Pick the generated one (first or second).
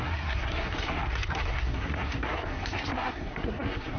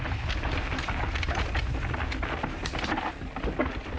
first